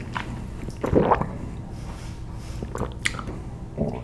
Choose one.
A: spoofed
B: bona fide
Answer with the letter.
B